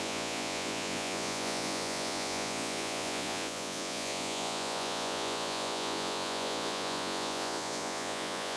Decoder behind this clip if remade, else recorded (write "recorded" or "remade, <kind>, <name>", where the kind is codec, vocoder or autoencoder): remade, vocoder, Vocos